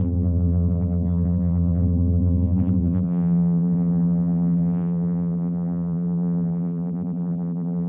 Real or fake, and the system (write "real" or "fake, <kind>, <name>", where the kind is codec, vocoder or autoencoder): fake, vocoder, BigVGAN v2